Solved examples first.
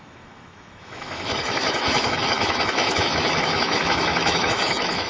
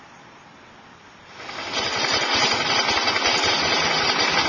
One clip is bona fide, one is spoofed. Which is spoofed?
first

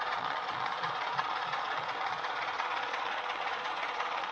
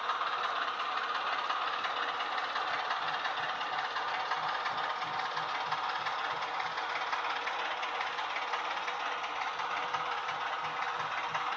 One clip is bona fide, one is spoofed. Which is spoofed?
first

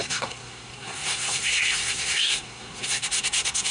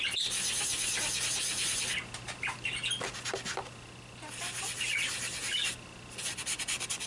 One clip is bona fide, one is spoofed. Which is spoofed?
first